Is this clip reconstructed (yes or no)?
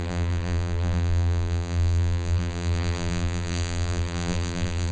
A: yes